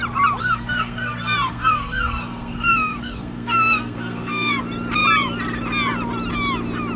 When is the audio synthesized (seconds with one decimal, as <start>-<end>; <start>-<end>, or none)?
0.4-4.6